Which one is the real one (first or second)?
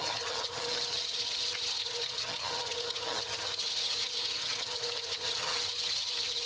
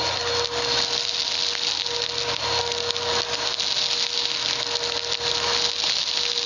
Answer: second